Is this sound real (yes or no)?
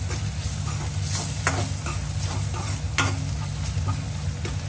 yes